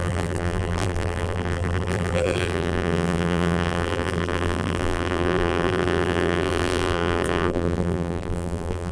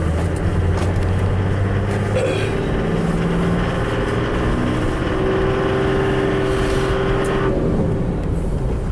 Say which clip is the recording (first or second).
second